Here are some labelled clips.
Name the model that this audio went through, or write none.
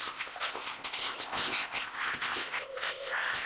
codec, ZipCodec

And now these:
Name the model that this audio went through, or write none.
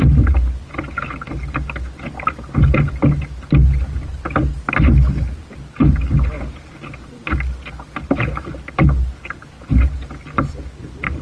none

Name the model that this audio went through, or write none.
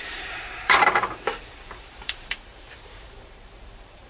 vocoder, BigVGAN v2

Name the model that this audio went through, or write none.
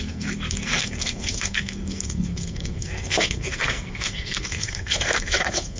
codec, SNAC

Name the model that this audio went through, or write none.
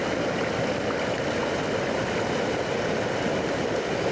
none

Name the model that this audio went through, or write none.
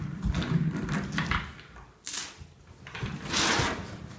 none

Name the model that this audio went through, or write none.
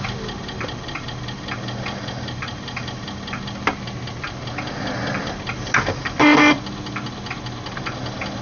none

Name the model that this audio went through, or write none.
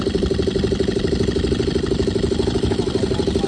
none